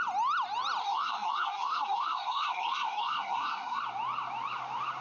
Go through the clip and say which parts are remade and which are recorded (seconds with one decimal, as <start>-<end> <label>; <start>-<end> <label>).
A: 0.0-0.8 recorded; 0.8-3.8 remade; 3.8-5.0 recorded

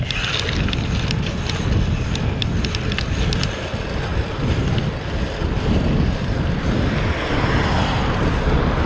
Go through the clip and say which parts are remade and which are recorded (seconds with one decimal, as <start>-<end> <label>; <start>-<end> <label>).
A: 0.0-8.9 recorded

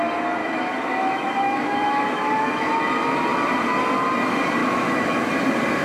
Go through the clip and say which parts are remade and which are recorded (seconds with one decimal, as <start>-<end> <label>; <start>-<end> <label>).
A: 0.0-0.4 recorded; 0.4-2.7 remade; 2.7-4.6 recorded; 4.6-5.3 remade; 5.3-5.8 recorded

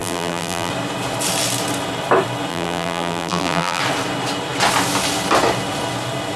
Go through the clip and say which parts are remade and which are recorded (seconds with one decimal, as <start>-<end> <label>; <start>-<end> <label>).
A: 0.0-0.7 remade; 0.7-2.5 recorded; 2.5-3.8 remade; 3.8-6.4 recorded

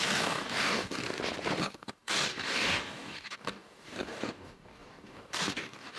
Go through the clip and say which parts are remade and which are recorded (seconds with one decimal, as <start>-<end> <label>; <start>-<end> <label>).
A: 0.0-1.0 remade; 1.0-1.6 recorded; 1.6-6.0 remade

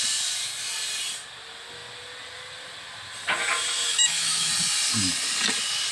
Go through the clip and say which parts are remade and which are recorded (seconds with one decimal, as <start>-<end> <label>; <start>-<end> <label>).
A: 0.0-3.9 recorded; 3.9-4.5 remade; 4.5-5.9 recorded

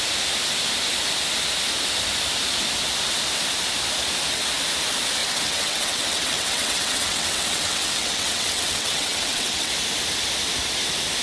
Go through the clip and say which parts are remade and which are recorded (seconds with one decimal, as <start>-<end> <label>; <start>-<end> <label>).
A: 0.0-5.2 recorded; 5.2-9.7 remade; 9.7-11.2 recorded

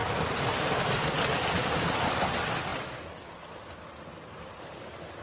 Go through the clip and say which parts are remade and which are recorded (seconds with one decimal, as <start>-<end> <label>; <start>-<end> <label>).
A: 0.0-5.2 recorded